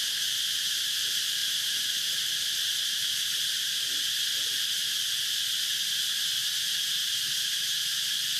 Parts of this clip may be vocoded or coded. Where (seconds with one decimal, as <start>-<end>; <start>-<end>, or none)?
1.4-3.8; 6.4-7.8